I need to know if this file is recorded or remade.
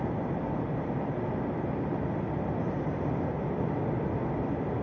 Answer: recorded